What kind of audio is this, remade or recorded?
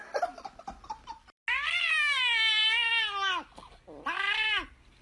recorded